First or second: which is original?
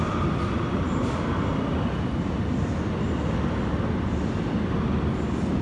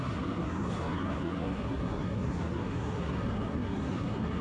first